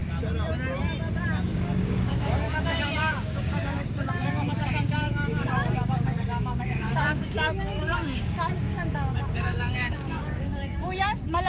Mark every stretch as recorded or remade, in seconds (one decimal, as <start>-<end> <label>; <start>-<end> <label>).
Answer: 0.0-1.5 recorded; 1.5-11.5 remade